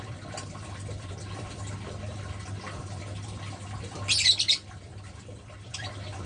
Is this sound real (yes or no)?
no